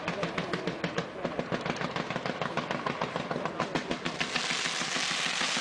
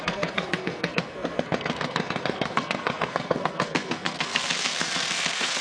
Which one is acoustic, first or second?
first